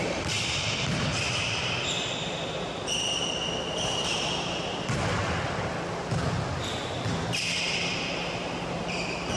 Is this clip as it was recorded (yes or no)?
no